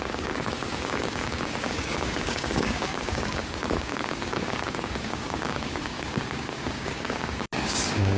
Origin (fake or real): fake